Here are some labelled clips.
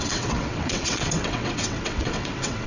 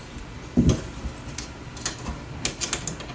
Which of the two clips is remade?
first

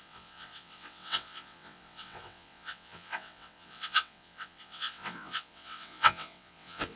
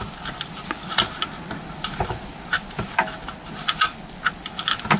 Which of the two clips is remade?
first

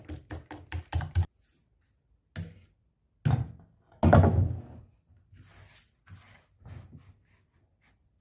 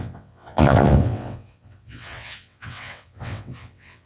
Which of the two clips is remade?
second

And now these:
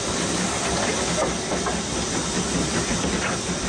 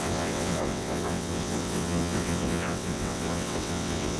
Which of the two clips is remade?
second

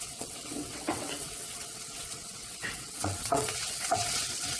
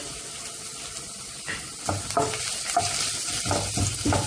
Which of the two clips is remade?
first